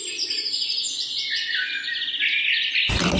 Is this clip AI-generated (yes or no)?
no